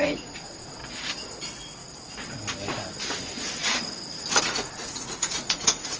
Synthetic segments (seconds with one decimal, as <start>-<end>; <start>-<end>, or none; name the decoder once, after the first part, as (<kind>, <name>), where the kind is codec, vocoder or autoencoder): 0.0-0.8 (vocoder, Vocos); 4.4-6.0